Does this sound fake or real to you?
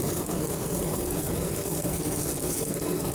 fake